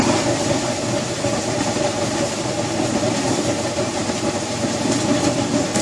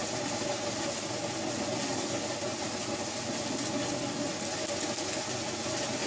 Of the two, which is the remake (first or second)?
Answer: first